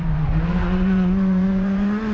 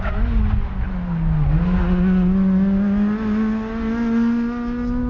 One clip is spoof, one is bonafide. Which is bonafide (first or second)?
second